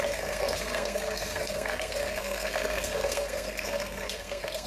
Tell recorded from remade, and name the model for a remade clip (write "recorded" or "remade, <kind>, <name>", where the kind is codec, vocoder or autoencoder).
remade, codec, SNAC